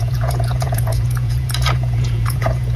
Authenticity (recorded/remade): remade